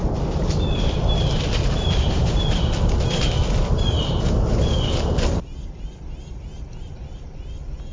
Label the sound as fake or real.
real